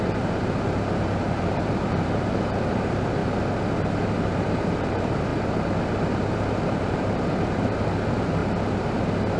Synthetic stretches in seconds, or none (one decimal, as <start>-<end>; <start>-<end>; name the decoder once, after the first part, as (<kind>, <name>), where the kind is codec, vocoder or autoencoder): 0.0-3.2 (vocoder, BigVGAN v2); 4.2-5.3; 6.3-8.4